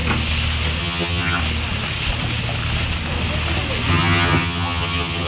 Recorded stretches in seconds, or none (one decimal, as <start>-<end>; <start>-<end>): 0.0-0.8; 1.4-3.9